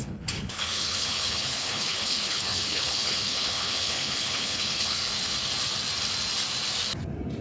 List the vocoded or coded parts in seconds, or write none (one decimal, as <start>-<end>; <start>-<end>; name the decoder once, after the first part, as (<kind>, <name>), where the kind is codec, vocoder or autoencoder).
0.0-5.0 (codec, HILCodec)